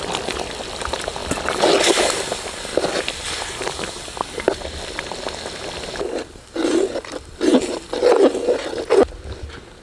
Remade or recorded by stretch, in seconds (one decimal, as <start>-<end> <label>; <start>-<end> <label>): 0.0-9.8 recorded